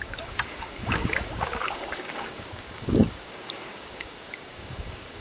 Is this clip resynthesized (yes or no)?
yes